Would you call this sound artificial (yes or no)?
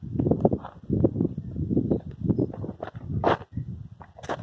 no